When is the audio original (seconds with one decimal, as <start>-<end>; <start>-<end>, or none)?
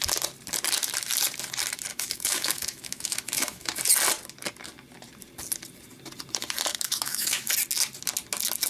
0.0-1.9; 3.8-6.7; 7.5-8.7